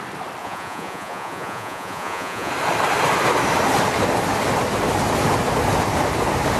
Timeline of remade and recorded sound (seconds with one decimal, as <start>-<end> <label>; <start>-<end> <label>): 0.0-0.4 recorded; 0.4-2.5 remade; 2.5-6.6 recorded